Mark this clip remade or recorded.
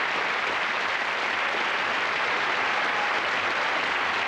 recorded